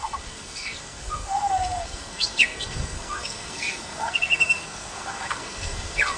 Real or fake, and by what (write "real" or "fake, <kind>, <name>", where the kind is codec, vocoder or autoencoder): fake, codec, SNAC